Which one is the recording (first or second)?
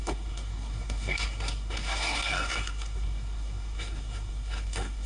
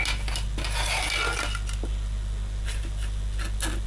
second